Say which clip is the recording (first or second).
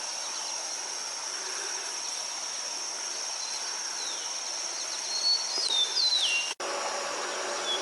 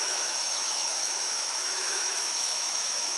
first